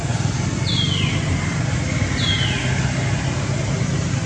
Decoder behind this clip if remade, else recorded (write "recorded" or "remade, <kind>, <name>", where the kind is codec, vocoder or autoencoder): recorded